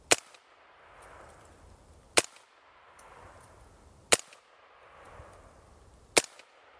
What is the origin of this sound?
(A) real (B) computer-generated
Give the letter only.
A